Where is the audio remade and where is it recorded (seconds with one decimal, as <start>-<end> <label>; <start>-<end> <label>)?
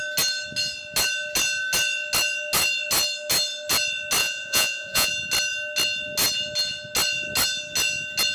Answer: 0.0-4.2 recorded; 4.2-5.1 remade; 5.1-8.3 recorded